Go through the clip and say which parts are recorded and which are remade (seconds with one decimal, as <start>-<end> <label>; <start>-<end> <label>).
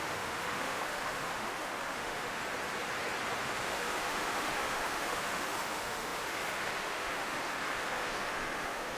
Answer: 0.0-2.4 remade; 2.4-3.4 recorded; 3.4-9.0 remade